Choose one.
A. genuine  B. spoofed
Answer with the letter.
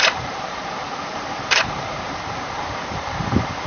B